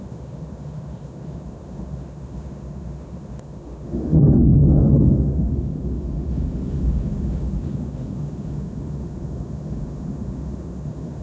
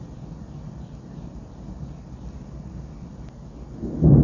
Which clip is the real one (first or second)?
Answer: second